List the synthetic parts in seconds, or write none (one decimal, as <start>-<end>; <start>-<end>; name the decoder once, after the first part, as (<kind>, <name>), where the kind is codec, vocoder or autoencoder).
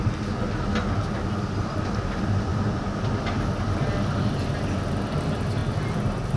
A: none